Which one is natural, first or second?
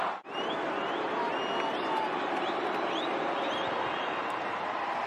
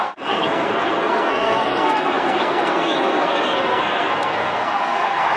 first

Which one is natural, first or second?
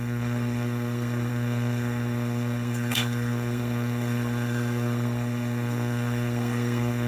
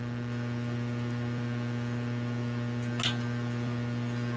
second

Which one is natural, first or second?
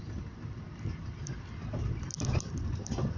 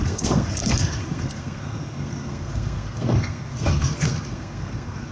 first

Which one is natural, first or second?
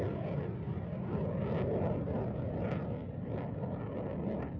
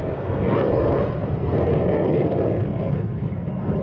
first